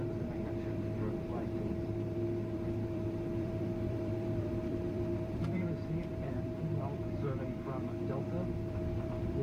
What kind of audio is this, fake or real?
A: fake